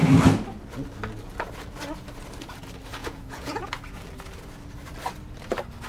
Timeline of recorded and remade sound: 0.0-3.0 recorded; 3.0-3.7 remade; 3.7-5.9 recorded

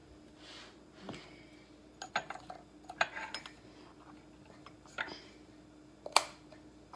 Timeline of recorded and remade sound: 0.0-7.0 recorded